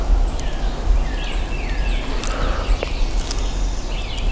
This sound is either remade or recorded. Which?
recorded